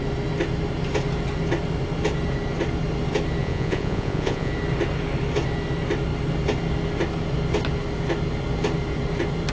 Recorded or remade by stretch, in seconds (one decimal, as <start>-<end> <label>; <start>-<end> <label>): 0.0-3.4 recorded; 3.4-4.5 remade; 4.5-9.5 recorded